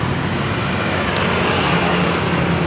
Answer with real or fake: real